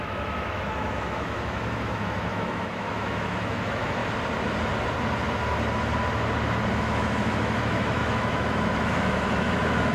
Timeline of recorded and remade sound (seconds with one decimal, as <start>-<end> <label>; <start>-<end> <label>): 0.0-4.0 remade; 4.0-6.8 recorded; 6.8-9.9 remade

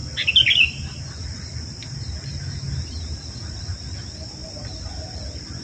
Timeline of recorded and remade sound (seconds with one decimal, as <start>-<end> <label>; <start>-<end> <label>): 0.0-1.0 remade; 1.0-5.6 recorded